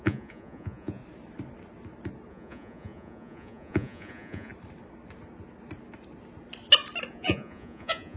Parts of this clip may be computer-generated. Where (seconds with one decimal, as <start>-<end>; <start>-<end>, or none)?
0.0-1.0; 2.3-4.5; 7.1-8.2